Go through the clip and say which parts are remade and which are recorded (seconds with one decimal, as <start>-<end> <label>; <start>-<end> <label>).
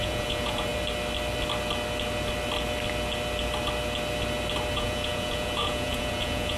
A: 0.0-0.7 remade; 0.7-4.7 recorded; 4.7-6.6 remade